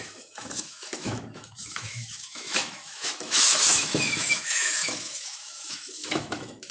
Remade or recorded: remade